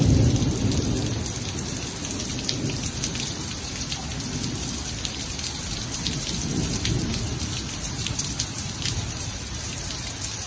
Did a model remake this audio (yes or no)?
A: yes